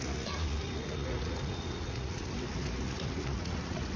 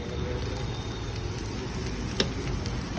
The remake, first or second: first